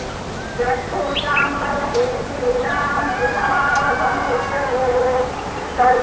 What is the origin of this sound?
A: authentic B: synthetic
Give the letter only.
A